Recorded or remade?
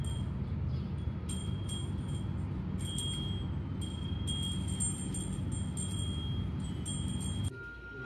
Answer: recorded